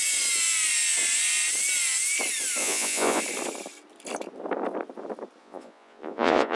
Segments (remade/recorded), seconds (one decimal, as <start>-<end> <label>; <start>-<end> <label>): 0.0-2.6 recorded; 2.6-3.2 remade; 3.2-5.4 recorded; 5.4-6.6 remade